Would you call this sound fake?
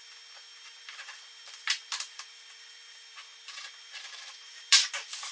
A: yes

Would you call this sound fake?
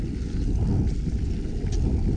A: no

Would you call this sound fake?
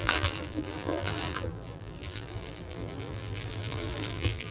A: yes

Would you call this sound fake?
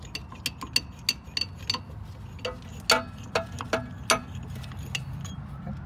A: no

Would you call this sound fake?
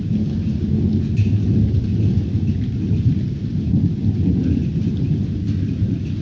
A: no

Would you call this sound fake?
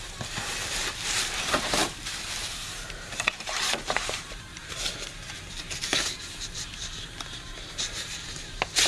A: yes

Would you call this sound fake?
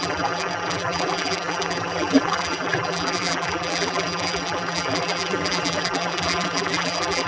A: yes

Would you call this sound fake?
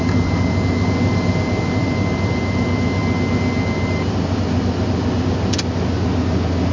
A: no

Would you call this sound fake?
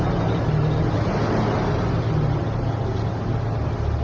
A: no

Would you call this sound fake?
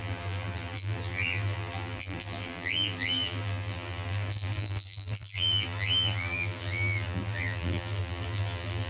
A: yes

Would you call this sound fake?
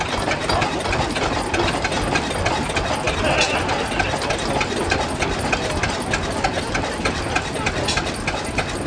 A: no